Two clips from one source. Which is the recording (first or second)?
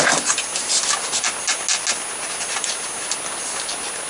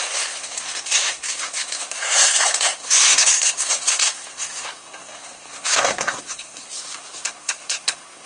first